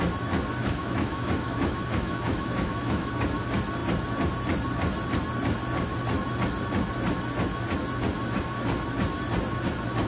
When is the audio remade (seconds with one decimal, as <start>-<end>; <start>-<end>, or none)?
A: 0.6-3.2